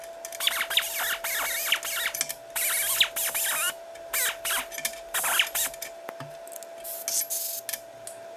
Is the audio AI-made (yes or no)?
no